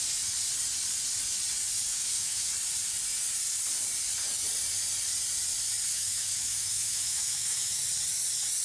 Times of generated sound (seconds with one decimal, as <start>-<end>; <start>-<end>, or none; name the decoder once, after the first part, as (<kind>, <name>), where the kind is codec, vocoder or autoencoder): 1.9-2.5 (autoencoder, DAC-VAE); 5.9-7.8